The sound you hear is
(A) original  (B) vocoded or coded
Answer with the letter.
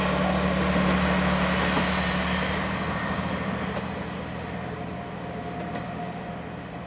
A